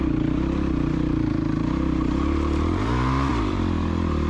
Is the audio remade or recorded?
remade